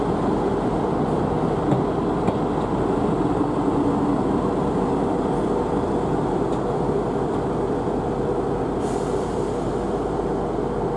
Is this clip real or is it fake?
real